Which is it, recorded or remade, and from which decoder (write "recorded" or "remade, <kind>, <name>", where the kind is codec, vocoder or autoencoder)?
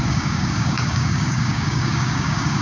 remade, codec, DAC